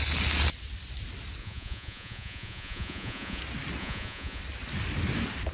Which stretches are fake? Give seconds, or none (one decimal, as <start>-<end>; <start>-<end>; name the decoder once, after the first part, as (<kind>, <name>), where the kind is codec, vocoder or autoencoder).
1.4-3.4 (vocoder, Vocos); 3.8-4.4